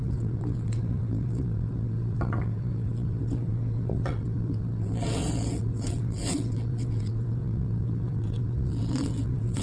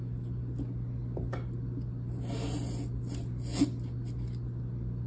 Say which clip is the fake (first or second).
first